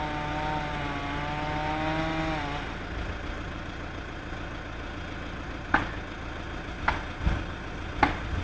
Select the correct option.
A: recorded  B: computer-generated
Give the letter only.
A